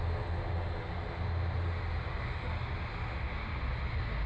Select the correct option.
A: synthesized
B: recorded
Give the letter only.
B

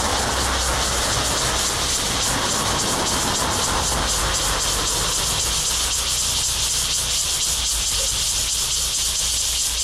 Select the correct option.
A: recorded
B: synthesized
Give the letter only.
A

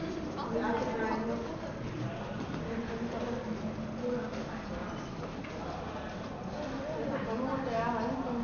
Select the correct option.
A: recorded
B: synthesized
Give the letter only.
A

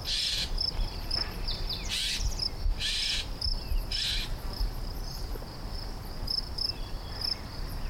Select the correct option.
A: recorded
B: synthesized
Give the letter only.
B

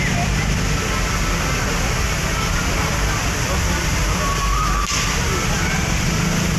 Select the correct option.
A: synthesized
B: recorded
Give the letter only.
B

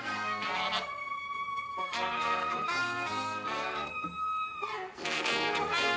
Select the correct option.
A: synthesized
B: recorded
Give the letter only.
A